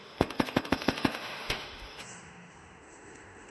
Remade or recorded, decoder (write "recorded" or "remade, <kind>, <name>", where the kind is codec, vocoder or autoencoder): remade, autoencoder, DAC-VAE